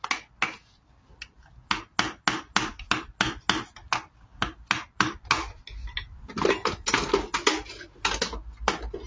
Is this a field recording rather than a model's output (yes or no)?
yes